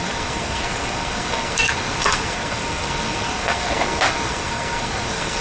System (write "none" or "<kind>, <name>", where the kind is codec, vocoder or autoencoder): codec, SNAC